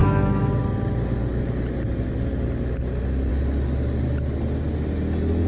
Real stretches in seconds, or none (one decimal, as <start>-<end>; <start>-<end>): 0.0-5.5